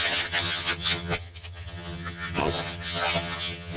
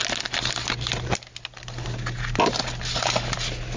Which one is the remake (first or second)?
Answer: first